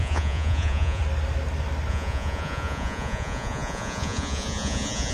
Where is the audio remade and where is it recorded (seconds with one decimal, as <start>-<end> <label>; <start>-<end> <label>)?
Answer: 0.0-1.0 remade; 1.0-1.9 recorded; 1.9-5.1 remade